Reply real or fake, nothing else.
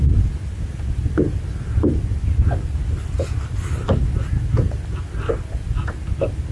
real